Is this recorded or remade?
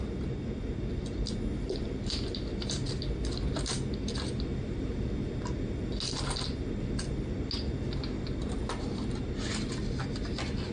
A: recorded